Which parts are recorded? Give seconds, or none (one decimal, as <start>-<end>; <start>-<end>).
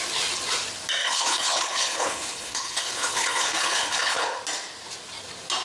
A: 0.0-1.0; 4.4-5.6